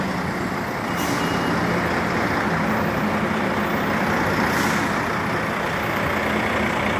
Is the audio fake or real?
real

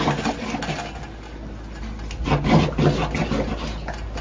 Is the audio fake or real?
real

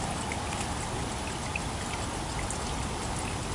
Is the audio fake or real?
real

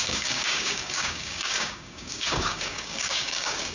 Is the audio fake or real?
fake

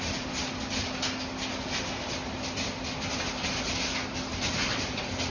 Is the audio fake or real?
real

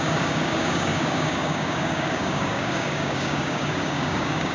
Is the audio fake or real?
fake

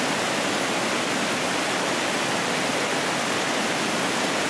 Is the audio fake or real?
real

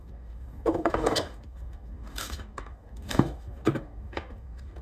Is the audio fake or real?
fake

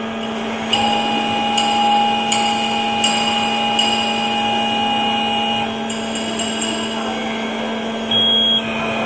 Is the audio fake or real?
real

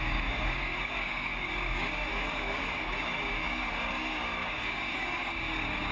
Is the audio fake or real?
fake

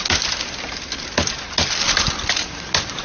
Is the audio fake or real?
real